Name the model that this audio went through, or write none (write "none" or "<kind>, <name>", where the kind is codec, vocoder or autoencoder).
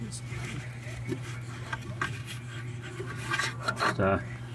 none